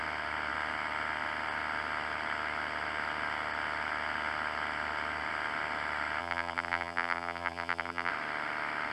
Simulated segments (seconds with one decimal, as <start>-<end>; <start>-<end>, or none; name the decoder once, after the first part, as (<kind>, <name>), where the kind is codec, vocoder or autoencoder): 6.2-8.1 (vocoder, BigVGAN v2)

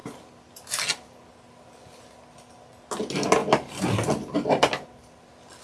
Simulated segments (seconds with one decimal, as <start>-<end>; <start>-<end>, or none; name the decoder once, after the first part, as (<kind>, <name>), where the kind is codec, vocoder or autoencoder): none

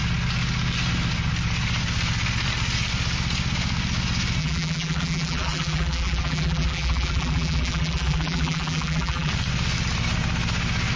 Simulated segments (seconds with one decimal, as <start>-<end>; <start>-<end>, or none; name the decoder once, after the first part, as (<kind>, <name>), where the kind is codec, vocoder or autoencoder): 4.4-9.3 (vocoder, BigVGAN v2)

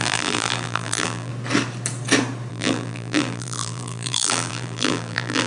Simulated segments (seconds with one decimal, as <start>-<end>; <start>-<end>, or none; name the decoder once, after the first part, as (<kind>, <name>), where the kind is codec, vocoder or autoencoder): 0.0-1.3 (vocoder, BigVGAN v2); 2.5-5.5